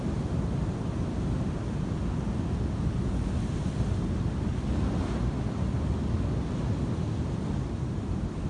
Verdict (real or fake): real